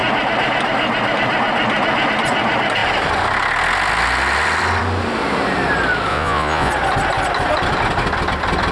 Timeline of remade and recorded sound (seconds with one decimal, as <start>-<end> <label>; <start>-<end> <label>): 0.0-6.1 recorded; 6.1-6.7 remade; 6.7-8.7 recorded